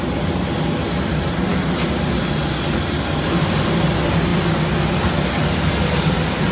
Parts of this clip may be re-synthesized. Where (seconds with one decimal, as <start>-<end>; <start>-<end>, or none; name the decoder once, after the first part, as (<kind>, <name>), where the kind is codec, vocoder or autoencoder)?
none

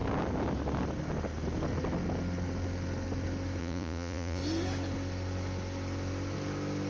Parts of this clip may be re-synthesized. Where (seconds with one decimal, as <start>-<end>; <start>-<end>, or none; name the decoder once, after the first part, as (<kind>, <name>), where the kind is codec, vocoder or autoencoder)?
3.6-4.4 (vocoder, Vocos)

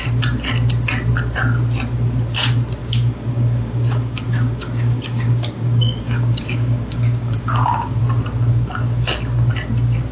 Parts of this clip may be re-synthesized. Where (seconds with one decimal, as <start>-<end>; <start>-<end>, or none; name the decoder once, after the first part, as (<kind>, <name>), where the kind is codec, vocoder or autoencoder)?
2.8-8.0 (codec, DAC)

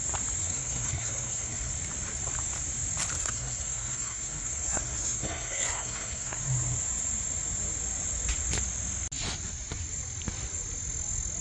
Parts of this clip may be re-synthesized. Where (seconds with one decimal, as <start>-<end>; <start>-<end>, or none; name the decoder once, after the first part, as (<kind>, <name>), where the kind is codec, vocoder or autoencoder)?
0.4-1.7 (codec, SNAC); 3.2-6.4